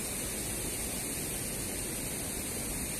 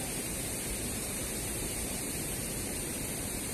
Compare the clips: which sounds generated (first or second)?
second